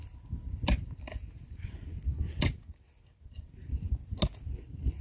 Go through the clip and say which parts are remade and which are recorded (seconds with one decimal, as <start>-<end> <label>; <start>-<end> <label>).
0.0-5.0 recorded

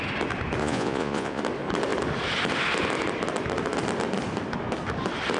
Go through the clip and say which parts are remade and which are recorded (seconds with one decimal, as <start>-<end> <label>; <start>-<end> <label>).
0.0-0.6 recorded; 0.6-1.4 remade; 1.4-5.4 recorded

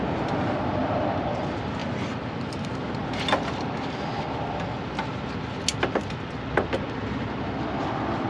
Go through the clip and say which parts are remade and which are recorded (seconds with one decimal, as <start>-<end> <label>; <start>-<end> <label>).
0.0-8.3 recorded

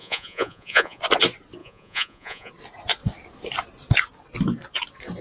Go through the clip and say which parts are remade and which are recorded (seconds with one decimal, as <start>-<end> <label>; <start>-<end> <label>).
0.0-1.0 remade; 1.0-1.6 recorded; 1.6-2.5 remade; 2.5-5.2 recorded

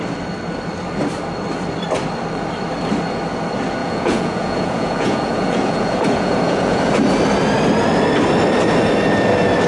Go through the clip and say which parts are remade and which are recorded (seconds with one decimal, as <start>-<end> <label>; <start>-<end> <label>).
0.0-3.8 recorded; 3.8-6.8 remade; 6.8-9.7 recorded

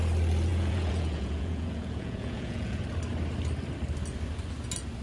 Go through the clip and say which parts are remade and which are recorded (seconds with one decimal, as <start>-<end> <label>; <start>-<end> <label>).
0.0-0.5 recorded; 0.5-2.8 remade; 2.8-5.0 recorded

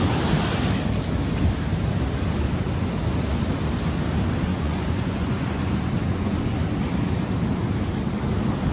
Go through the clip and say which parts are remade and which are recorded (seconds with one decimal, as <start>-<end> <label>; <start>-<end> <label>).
0.0-4.5 recorded; 4.5-6.4 remade; 6.4-8.7 recorded

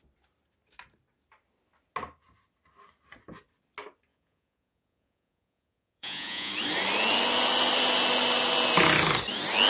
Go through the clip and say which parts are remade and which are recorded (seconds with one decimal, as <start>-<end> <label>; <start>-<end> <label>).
0.0-4.1 recorded; 4.1-6.5 remade; 6.5-9.7 recorded